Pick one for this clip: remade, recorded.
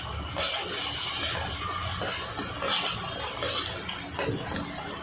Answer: recorded